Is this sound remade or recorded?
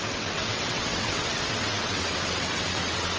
remade